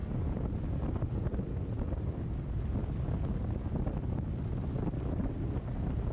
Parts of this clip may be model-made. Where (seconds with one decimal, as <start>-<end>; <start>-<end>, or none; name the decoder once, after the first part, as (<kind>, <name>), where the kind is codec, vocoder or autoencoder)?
none